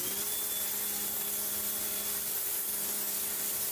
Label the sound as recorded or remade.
recorded